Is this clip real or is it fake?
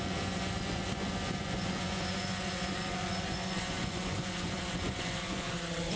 fake